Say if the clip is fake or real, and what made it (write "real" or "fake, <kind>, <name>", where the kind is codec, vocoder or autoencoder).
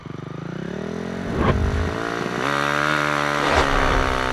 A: real